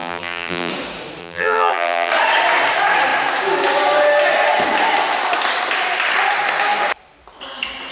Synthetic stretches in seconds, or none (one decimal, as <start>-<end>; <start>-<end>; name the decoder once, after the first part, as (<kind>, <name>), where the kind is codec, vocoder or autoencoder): 0.0-0.7 (vocoder, BigVGAN v2); 1.2-2.1